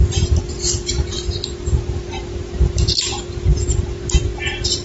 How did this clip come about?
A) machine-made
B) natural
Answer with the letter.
B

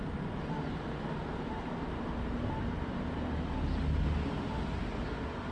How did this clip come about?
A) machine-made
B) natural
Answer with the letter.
B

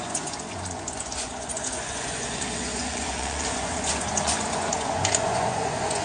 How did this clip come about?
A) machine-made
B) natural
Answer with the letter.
A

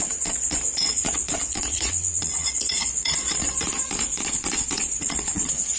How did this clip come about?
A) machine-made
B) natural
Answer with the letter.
A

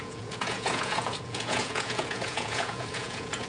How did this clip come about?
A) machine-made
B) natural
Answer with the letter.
A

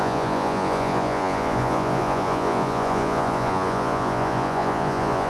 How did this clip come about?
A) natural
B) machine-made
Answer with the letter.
B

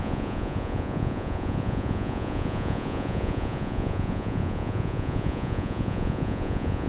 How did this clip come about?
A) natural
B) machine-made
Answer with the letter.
B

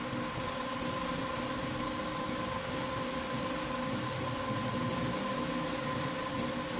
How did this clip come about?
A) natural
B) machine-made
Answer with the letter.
A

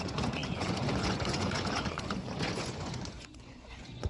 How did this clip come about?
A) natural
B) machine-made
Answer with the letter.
B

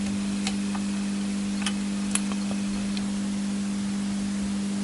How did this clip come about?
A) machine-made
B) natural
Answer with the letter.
B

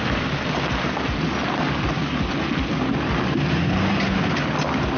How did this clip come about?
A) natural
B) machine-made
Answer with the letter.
A